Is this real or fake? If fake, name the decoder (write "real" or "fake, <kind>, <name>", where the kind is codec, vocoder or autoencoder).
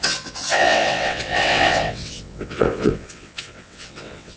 fake, vocoder, WaveNeXt